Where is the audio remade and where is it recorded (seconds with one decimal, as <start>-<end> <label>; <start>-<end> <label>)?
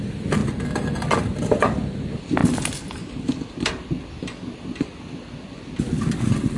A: 0.0-6.6 recorded